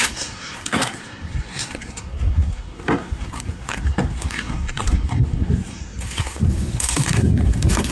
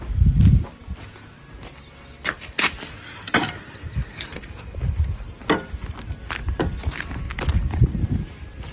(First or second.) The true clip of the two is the second